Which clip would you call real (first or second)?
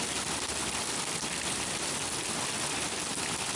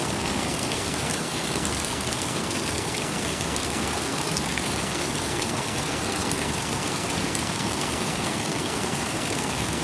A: first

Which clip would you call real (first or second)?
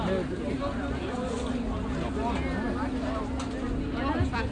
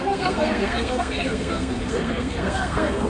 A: first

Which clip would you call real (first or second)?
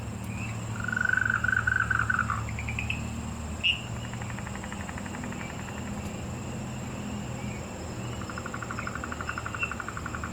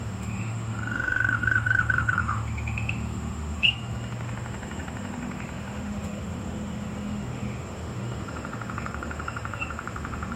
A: first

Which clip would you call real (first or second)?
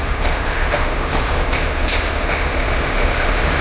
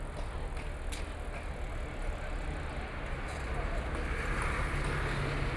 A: second